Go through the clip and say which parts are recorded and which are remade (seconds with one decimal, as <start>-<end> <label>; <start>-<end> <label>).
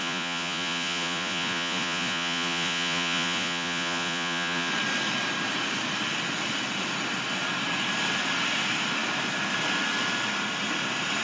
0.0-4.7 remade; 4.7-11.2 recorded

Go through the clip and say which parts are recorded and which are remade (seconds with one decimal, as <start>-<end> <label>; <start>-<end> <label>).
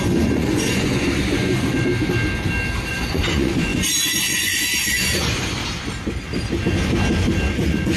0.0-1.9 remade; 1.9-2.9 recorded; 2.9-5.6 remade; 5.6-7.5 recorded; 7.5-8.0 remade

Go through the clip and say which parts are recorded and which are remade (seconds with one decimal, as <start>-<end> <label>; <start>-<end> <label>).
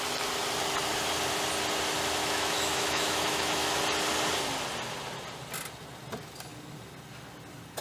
0.0-2.2 recorded; 2.2-3.7 remade; 3.7-7.8 recorded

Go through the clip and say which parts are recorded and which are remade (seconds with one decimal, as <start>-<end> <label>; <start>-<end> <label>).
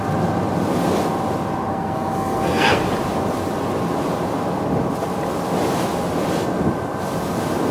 0.0-1.7 recorded; 1.7-2.8 remade; 2.8-7.7 recorded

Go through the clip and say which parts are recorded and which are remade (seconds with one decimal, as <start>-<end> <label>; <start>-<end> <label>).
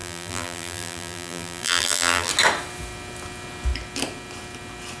0.0-2.3 remade; 2.3-5.0 recorded